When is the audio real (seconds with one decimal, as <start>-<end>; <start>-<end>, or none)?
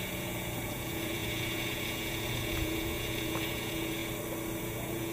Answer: 4.0-4.6